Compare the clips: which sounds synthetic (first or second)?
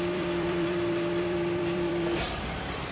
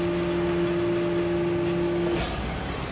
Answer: first